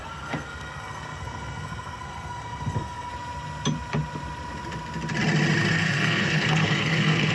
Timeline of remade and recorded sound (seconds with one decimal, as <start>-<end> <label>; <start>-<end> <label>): 0.0-3.1 remade; 3.1-5.7 recorded; 5.7-7.3 remade